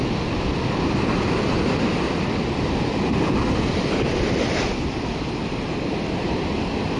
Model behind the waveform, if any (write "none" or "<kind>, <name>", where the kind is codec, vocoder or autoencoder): vocoder, BigVGAN v2